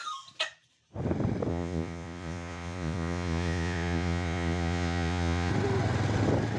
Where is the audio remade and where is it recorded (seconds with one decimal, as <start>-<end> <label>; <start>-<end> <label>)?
0.0-1.5 recorded; 1.5-5.5 remade; 5.5-6.6 recorded